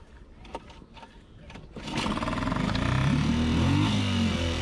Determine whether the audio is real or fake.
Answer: real